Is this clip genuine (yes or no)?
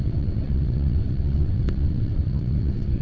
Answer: no